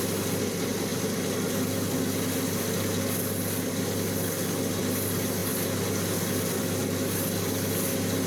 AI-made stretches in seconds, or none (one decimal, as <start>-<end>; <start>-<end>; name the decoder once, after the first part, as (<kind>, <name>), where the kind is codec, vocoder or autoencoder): none